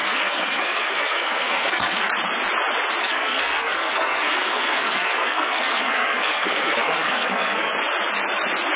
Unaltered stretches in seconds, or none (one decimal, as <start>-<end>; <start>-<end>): 2.1-3.0; 7.7-8.8